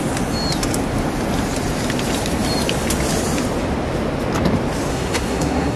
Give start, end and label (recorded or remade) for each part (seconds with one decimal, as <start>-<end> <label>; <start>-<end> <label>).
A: 0.0-4.9 recorded; 4.9-5.8 remade